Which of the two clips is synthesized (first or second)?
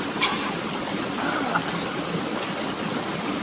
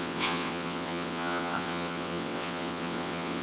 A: second